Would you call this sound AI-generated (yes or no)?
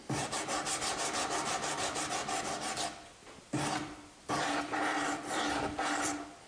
no